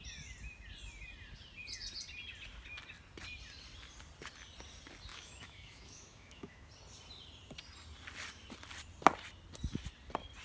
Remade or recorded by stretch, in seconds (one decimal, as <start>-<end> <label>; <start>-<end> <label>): 0.0-5.1 recorded; 5.1-6.7 remade; 6.7-10.4 recorded